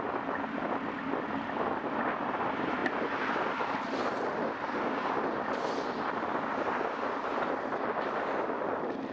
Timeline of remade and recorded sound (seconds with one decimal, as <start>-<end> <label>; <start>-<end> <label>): 0.0-9.1 recorded